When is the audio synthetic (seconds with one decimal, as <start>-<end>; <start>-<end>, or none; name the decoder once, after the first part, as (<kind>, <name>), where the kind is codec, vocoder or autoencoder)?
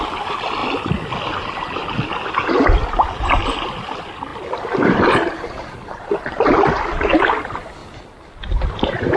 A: 4.3-6.8 (vocoder, BigVGAN v2); 7.8-9.2